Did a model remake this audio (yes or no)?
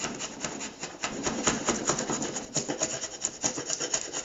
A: yes